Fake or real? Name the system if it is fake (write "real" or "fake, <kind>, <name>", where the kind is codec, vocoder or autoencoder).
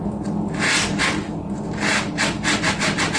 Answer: real